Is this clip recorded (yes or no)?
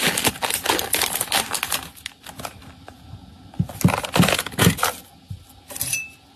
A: yes